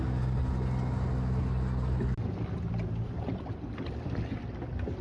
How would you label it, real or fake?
real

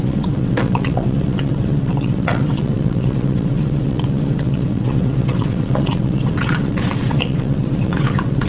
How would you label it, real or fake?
fake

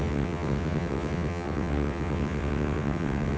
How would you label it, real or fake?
fake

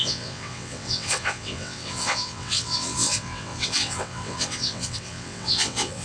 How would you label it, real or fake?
fake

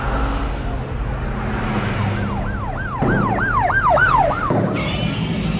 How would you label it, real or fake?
real